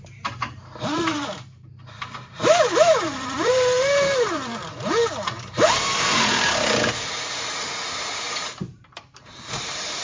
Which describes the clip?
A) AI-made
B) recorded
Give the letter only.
A